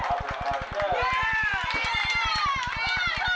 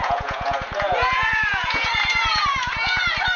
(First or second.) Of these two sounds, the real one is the first